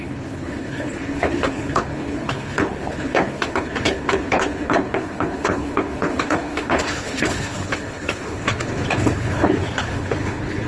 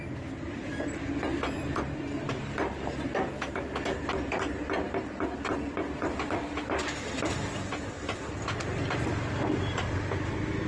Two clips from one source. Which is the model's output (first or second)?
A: first